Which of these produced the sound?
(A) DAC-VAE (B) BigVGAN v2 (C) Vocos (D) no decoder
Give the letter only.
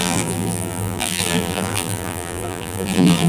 B